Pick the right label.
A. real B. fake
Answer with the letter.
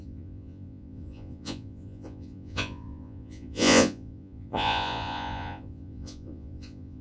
B